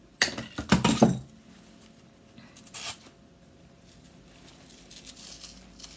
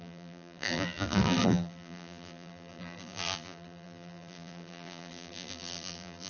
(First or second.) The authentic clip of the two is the first